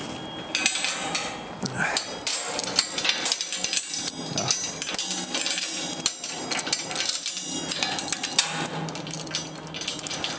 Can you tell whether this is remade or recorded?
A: recorded